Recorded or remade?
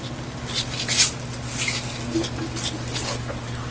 recorded